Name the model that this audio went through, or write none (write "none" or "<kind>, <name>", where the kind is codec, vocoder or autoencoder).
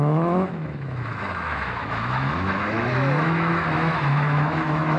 autoencoder, DAC-VAE